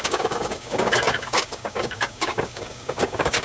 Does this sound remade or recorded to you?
remade